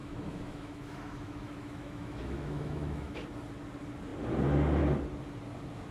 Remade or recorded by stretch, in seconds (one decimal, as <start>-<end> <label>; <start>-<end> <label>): 0.0-3.2 remade; 3.2-5.9 recorded